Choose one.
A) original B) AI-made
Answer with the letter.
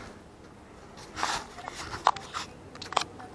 A